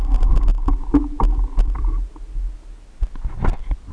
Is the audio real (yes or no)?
yes